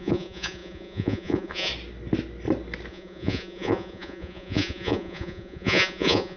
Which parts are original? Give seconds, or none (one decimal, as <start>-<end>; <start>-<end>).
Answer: 1.7-2.9